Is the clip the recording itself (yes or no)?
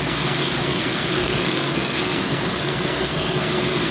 no